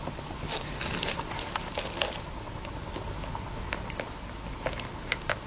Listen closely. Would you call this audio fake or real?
real